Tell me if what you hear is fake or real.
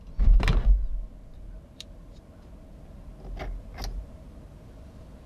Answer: real